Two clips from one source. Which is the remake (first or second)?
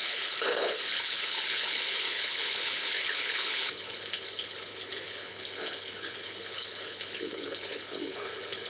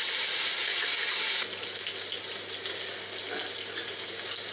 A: first